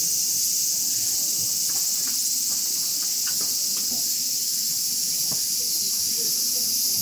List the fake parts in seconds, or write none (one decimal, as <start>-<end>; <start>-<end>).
none